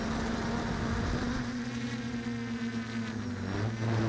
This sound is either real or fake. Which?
real